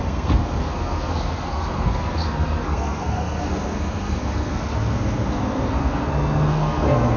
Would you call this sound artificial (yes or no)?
yes